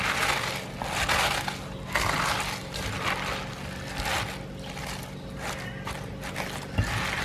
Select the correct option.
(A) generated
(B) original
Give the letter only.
B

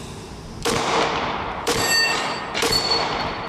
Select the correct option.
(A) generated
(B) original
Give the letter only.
A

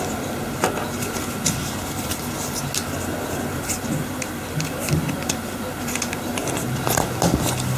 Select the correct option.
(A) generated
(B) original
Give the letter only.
B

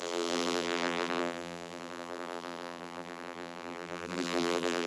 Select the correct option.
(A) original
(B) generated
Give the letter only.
B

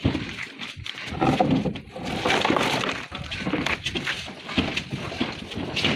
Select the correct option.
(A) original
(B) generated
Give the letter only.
A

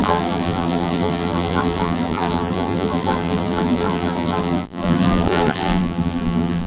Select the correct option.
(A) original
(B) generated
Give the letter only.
B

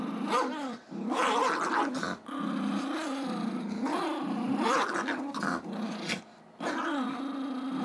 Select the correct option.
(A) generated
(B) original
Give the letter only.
B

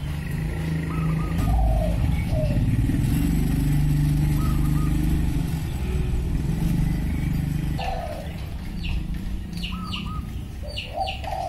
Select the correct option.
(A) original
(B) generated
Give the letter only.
A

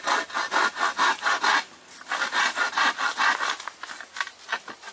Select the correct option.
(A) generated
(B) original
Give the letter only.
B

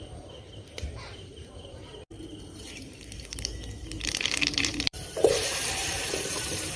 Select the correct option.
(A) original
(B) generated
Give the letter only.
B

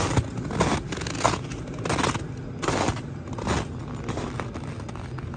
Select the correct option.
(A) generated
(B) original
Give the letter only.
B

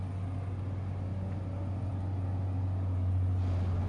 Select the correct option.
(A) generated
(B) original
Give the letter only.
B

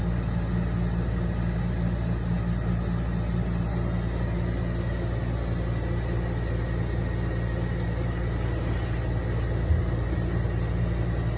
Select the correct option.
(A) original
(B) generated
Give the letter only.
A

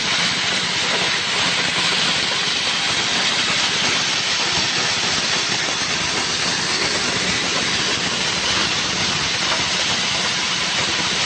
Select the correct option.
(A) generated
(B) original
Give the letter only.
B